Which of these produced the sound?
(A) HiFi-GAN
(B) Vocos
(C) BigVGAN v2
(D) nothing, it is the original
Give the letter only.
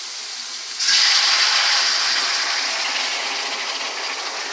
D